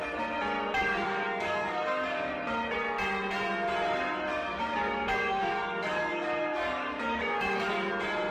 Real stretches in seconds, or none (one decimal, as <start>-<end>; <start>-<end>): 0.0-0.8; 2.3-4.3; 7.9-8.3